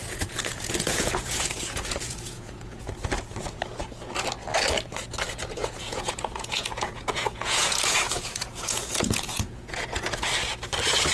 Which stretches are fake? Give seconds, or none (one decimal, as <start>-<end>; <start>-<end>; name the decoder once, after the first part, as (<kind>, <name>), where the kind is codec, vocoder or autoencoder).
0.0-2.9 (vocoder, Vocos); 5.6-10.3